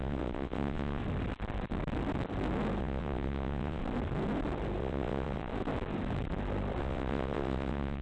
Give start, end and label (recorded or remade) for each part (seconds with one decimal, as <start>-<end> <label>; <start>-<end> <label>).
0.0-1.0 remade; 1.0-2.8 recorded; 2.8-3.8 remade; 3.8-4.8 recorded; 4.8-5.5 remade; 5.5-6.8 recorded; 6.8-8.0 remade